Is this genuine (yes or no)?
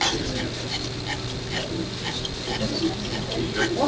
yes